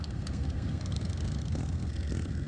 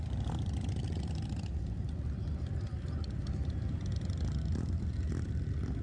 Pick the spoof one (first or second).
first